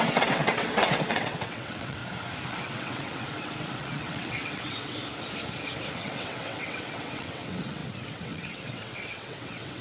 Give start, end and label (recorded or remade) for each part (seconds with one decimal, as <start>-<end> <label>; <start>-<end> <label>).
0.0-2.0 remade; 2.0-2.5 recorded; 2.5-5.0 remade; 5.0-5.9 recorded; 5.9-9.8 remade